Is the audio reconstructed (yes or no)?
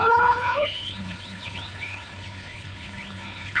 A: yes